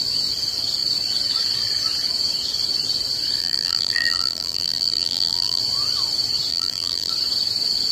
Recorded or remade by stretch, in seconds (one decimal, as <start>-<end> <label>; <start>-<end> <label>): 0.0-3.4 recorded; 3.4-5.6 remade; 5.6-6.5 recorded; 6.5-7.1 remade; 7.1-7.9 recorded